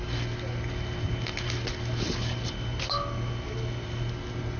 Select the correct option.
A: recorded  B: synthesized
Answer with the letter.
A